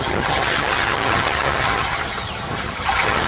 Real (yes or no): no